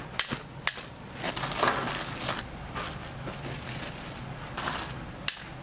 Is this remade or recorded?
recorded